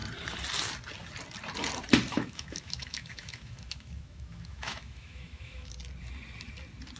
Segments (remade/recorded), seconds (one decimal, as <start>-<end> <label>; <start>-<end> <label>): 0.0-2.1 recorded; 2.1-5.7 remade; 5.7-7.0 recorded